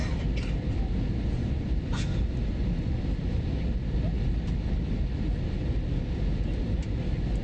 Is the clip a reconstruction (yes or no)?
no